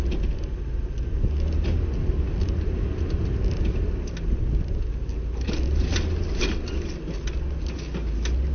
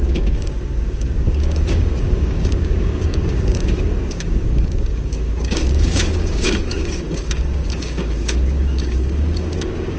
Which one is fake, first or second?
second